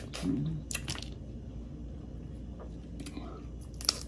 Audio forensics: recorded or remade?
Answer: recorded